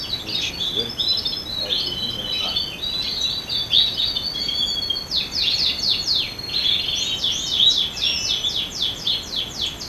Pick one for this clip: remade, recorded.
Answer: recorded